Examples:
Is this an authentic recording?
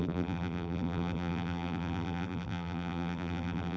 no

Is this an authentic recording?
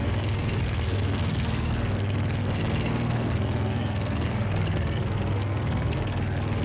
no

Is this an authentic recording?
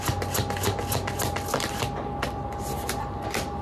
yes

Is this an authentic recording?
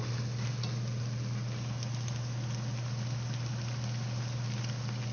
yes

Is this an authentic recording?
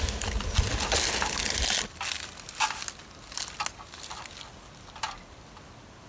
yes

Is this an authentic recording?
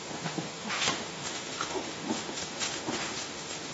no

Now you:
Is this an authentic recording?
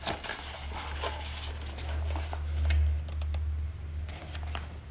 yes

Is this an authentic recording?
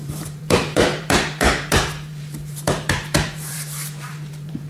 no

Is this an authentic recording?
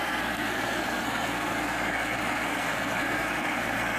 no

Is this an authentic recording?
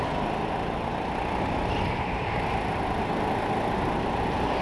yes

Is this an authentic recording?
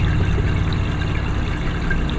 yes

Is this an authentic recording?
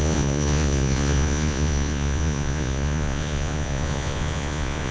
no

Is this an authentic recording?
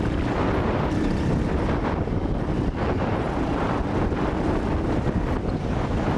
yes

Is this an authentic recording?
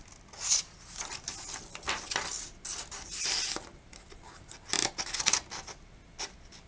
yes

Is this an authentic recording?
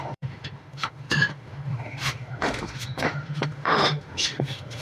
no